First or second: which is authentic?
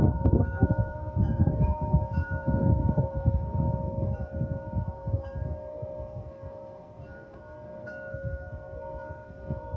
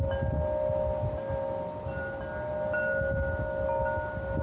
second